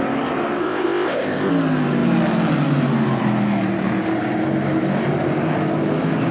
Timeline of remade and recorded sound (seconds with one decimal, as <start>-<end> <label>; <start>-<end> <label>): 0.0-0.6 recorded; 0.6-1.5 remade; 1.5-6.3 recorded